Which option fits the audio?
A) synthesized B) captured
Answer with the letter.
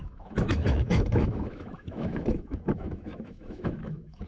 A